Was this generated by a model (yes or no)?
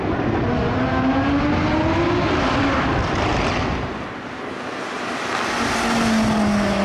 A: no